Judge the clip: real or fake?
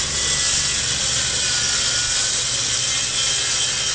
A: real